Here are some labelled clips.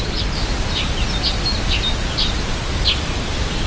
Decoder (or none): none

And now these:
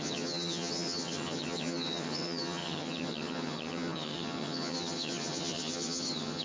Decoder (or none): vocoder, HiFi-GAN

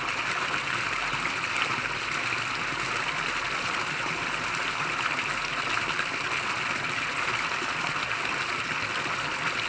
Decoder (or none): none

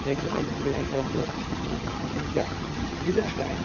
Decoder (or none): vocoder, HiFi-GAN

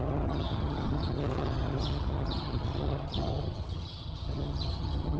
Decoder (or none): vocoder, HiFi-GAN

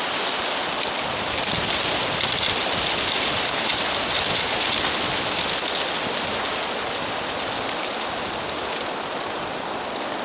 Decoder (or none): none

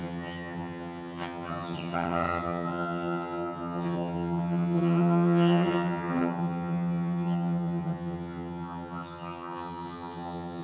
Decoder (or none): vocoder, HiFi-GAN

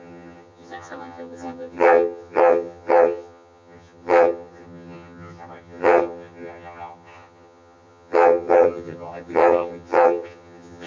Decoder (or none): vocoder, HiFi-GAN